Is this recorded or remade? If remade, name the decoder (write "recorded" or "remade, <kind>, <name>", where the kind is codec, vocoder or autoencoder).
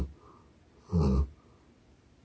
recorded